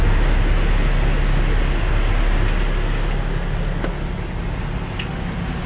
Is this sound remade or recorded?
recorded